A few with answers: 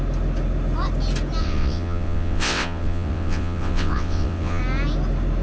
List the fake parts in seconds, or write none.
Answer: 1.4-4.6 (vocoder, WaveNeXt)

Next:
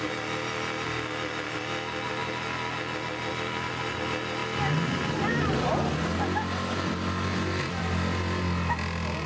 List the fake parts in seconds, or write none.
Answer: none